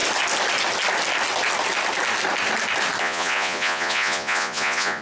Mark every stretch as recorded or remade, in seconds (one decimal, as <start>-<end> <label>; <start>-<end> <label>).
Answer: 0.0-3.0 recorded; 3.0-5.0 remade